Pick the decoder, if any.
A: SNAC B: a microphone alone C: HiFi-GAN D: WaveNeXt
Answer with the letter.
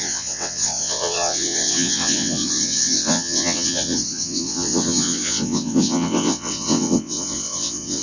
D